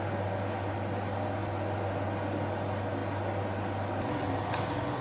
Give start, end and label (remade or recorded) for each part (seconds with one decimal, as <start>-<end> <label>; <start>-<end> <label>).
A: 0.0-5.0 recorded